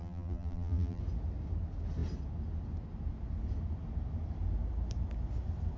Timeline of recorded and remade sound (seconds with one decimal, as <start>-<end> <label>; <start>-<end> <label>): 0.0-1.0 remade; 1.0-5.8 recorded